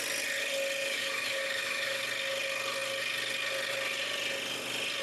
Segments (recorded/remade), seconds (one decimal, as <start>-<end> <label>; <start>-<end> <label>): 0.0-0.8 recorded; 0.8-2.0 remade; 2.0-5.0 recorded